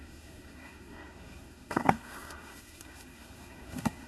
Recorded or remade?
remade